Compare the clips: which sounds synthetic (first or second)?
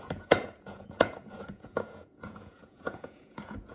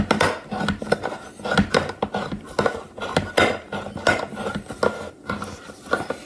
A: first